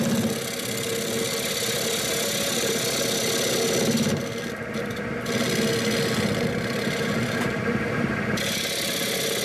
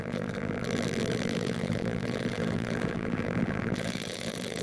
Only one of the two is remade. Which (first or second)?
second